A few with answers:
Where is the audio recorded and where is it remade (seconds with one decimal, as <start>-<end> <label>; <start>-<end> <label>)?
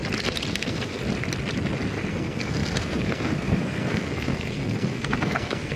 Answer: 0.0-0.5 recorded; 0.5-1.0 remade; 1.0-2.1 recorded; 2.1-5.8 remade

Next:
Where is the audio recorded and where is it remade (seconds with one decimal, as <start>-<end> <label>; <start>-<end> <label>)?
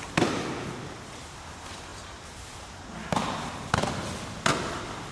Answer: 0.0-5.1 recorded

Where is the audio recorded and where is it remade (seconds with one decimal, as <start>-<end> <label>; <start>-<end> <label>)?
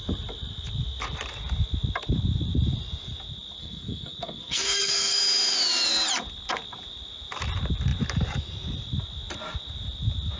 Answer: 0.0-3.6 recorded; 3.6-5.2 remade; 5.2-10.4 recorded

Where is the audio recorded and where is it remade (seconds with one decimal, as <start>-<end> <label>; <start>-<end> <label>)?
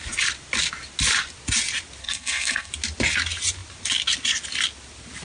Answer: 0.0-2.0 recorded; 2.0-2.7 remade; 2.7-5.2 recorded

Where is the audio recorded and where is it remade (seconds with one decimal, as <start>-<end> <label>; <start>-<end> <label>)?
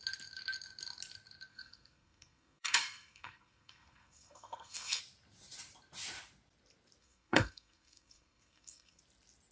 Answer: 0.0-1.5 recorded; 1.5-5.0 remade; 5.0-7.0 recorded; 7.0-9.0 remade; 9.0-9.5 recorded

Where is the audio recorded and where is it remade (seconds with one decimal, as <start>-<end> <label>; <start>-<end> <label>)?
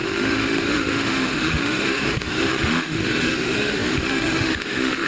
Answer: 0.0-5.1 remade